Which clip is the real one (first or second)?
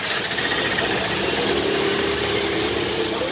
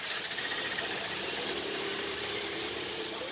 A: first